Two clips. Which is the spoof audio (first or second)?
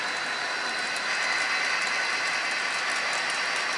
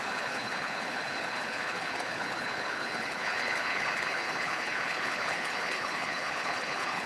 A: second